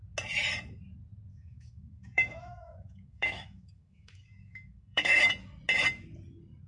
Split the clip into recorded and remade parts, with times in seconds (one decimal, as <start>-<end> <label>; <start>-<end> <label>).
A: 0.0-1.3 recorded; 1.3-5.3 remade; 5.3-6.7 recorded